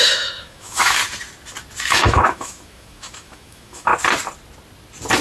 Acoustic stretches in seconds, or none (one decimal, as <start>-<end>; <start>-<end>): 1.0-1.9; 3.9-5.2